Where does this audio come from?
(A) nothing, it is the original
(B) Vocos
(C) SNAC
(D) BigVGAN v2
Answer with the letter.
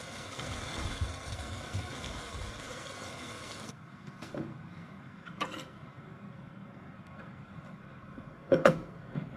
C